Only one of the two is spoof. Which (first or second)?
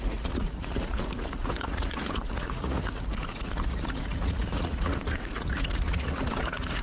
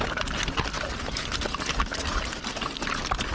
first